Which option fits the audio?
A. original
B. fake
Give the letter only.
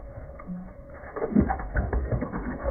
B